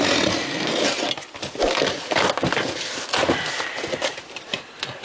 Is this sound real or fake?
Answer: real